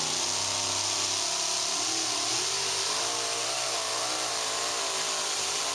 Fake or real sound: real